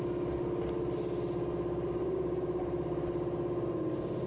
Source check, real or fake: real